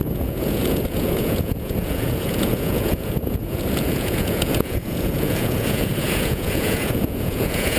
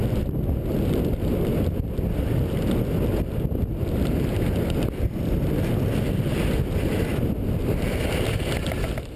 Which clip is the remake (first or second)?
first